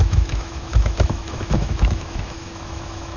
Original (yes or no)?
no